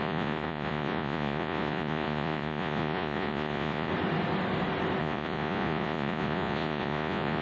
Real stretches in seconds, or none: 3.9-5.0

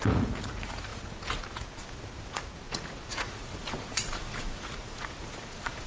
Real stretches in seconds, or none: none

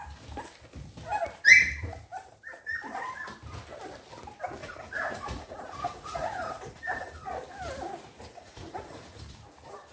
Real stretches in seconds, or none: 0.0-4.6; 7.3-8.3; 9.2-9.9